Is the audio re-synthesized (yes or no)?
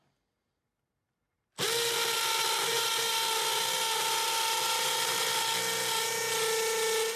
no